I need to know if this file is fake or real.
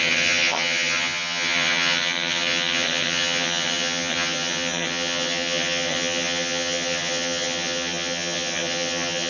fake